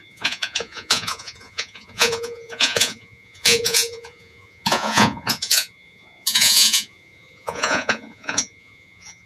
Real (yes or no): no